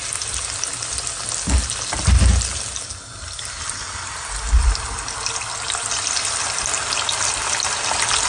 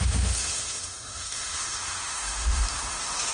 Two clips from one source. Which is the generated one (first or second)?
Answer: second